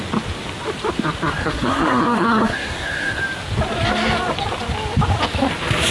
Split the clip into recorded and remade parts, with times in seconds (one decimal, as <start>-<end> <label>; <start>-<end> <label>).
0.0-1.4 recorded; 1.4-3.2 remade; 3.2-5.9 recorded